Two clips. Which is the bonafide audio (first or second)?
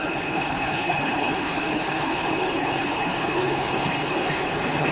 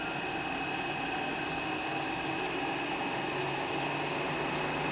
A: second